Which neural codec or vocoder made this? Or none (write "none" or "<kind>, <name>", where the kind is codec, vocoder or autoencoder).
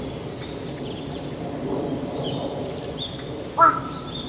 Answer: vocoder, BigVGAN v2